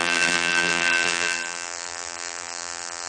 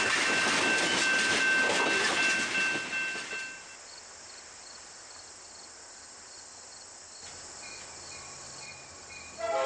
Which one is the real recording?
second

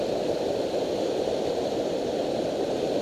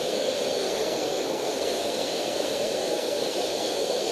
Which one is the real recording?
first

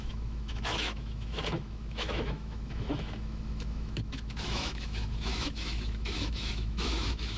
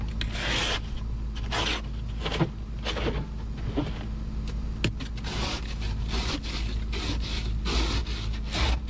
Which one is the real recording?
second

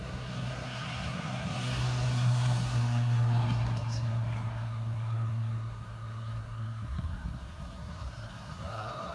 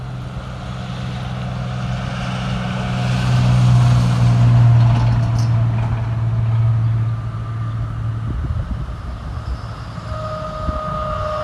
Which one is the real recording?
second